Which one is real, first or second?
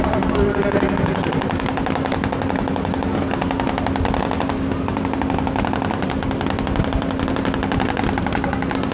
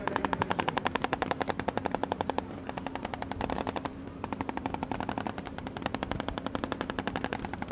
first